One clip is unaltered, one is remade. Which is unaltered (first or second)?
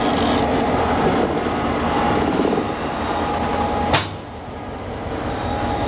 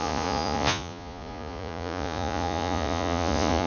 first